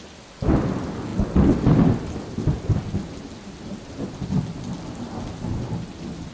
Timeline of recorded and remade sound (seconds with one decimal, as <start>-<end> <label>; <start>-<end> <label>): 0.0-6.3 recorded